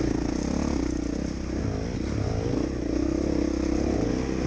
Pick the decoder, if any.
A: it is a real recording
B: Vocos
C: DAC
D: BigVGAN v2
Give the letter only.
A